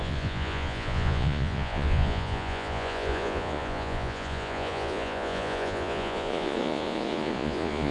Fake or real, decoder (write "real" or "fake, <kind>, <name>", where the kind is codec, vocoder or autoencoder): fake, vocoder, Vocos